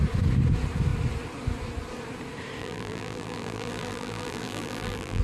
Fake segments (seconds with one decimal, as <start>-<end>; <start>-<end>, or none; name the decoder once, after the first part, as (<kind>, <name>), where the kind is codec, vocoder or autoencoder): 2.6-5.2 (vocoder, BigVGAN v2)